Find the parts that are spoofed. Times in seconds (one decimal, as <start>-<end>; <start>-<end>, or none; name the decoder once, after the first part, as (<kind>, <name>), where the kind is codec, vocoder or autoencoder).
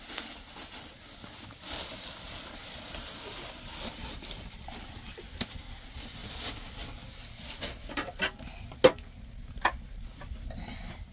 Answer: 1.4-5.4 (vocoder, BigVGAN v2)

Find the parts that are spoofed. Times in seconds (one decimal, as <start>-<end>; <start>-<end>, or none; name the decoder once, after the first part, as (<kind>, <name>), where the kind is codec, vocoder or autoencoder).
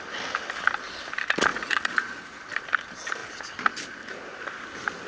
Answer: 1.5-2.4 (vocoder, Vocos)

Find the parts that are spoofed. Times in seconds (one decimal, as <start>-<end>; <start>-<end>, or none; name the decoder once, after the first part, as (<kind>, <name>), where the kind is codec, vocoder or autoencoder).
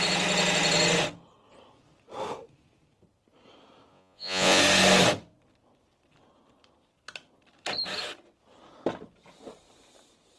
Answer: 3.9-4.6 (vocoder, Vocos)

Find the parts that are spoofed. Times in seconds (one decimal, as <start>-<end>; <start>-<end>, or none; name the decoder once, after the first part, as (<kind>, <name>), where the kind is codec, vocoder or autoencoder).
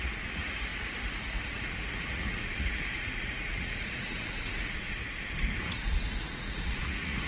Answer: 0.0-5.0 (vocoder, Vocos); 5.6-7.3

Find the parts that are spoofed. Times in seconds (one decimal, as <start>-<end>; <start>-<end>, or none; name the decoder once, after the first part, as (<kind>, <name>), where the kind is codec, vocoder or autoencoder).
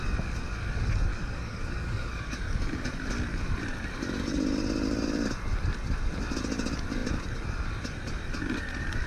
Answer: 1.1-2.9 (codec, DAC)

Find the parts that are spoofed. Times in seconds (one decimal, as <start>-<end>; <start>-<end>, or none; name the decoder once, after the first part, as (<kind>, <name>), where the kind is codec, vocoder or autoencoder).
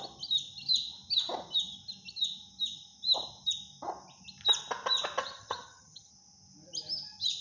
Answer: 5.2-6.1 (vocoder, HiFi-GAN)